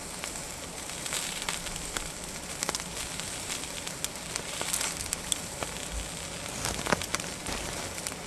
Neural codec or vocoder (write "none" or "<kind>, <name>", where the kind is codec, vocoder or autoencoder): none